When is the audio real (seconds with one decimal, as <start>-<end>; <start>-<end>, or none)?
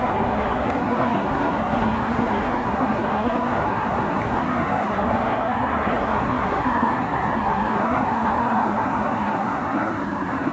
none